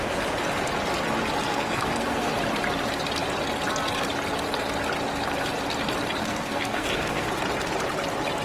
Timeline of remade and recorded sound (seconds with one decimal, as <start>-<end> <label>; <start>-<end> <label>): 0.0-1.5 recorded; 1.5-2.3 remade; 2.3-6.2 recorded; 6.2-7.3 remade; 7.3-8.4 recorded